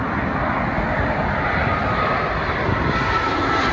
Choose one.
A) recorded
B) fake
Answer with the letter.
A